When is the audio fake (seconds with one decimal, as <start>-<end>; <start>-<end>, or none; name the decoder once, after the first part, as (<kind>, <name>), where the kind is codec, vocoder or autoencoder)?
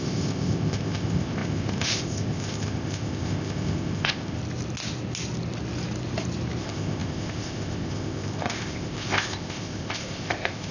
0.0-4.4 (codec, ZipCodec); 6.6-10.7